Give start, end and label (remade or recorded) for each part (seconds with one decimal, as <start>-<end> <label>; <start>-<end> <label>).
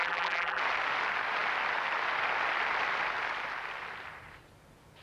0.0-0.6 remade; 0.6-5.0 recorded